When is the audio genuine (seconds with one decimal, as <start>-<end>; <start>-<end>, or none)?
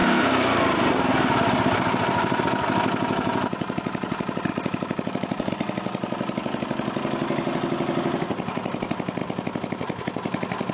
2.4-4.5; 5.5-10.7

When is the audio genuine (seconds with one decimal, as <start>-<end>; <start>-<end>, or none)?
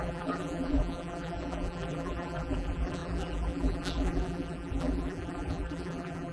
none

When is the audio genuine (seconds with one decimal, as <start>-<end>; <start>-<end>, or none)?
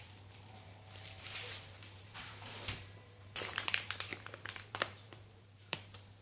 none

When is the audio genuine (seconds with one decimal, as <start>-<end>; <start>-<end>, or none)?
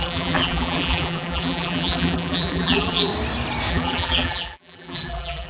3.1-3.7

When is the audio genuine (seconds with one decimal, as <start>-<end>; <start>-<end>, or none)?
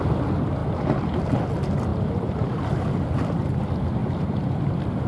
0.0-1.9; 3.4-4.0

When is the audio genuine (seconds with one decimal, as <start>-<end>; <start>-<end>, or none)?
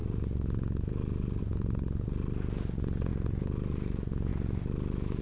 0.0-5.2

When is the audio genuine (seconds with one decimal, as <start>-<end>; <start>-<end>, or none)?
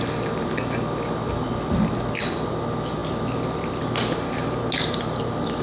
0.0-5.6